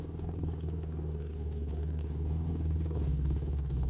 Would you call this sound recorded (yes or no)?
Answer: no